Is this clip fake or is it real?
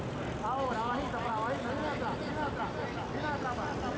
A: real